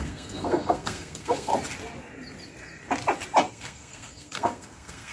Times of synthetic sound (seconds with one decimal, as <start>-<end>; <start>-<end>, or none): 0.0-1.5; 3.5-5.1